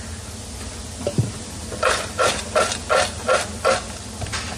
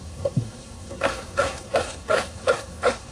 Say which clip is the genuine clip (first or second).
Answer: first